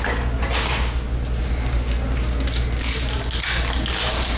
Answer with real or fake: real